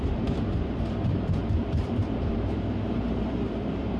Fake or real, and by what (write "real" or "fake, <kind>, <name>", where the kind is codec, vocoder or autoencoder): fake, vocoder, BigVGAN v2